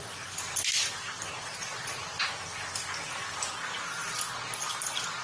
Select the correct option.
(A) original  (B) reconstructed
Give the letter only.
A